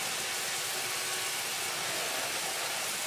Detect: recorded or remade recorded